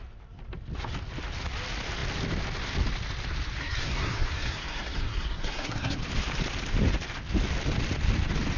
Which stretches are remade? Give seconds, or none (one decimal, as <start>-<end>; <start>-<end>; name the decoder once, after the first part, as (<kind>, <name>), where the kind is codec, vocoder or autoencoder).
3.6-6.0 (codec, SNAC)